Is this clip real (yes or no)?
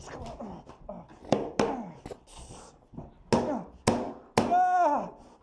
yes